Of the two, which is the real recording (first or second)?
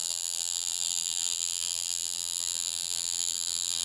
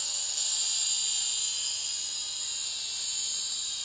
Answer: second